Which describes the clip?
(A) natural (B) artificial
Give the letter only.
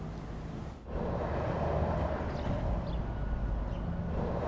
A